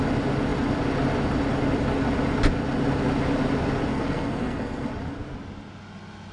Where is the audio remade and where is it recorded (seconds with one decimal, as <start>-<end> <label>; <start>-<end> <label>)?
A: 0.0-3.9 recorded; 3.9-4.9 remade; 4.9-6.3 recorded